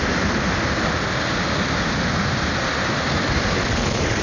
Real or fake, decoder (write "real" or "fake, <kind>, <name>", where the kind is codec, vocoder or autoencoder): real